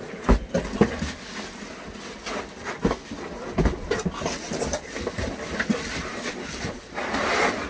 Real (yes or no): yes